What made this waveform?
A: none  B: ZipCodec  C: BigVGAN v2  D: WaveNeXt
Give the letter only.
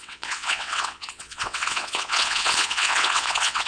D